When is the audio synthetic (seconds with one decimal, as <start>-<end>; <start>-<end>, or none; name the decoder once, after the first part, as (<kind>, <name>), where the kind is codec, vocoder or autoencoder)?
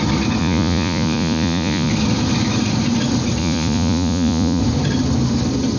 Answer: 0.4-1.9 (vocoder, Vocos); 3.4-4.6